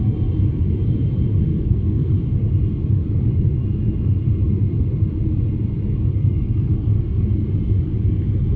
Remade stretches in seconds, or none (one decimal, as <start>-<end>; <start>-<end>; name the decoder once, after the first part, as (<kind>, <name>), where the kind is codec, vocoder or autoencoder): 1.5-2.1 (codec, SNAC); 6.1-7.4